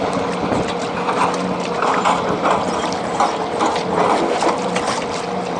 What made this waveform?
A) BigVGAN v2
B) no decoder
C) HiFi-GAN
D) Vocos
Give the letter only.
B